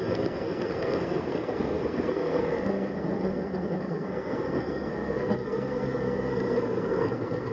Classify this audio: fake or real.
fake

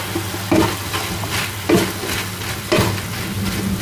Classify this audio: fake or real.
real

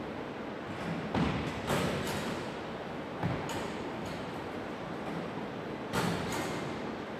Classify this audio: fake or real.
real